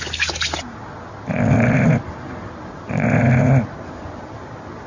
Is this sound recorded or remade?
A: recorded